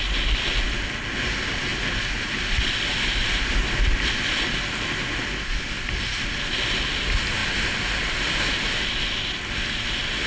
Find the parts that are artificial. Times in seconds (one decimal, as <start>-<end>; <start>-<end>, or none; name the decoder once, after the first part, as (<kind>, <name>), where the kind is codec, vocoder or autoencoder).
none